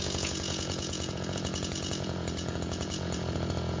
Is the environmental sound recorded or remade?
remade